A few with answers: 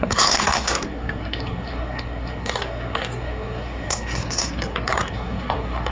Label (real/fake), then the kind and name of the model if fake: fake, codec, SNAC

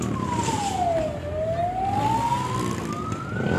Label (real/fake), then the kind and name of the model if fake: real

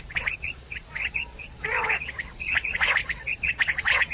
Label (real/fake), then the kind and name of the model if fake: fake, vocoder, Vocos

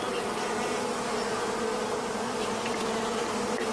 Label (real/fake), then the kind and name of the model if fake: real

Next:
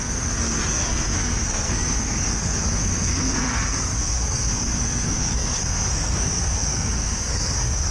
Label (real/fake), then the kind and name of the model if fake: fake, codec, SNAC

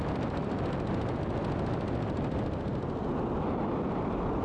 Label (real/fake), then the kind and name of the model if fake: real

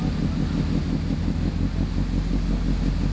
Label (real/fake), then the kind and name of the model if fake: real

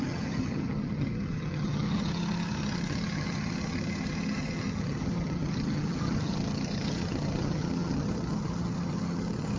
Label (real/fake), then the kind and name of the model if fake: fake, vocoder, HiFi-GAN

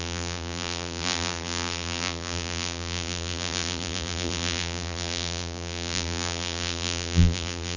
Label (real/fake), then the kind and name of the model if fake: fake, vocoder, BigVGAN v2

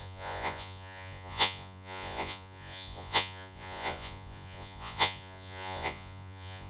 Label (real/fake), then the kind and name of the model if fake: fake, vocoder, Vocos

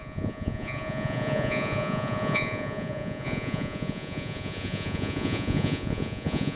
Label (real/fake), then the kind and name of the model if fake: fake, vocoder, Vocos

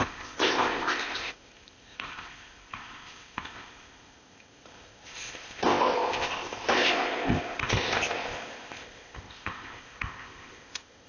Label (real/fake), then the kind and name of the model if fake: fake, codec, ZipCodec